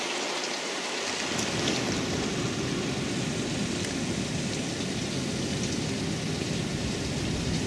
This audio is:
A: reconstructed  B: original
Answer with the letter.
B